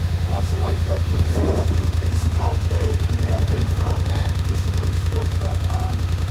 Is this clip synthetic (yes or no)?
yes